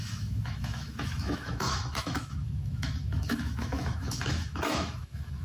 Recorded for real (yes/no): no